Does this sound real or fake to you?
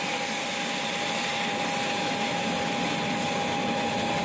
real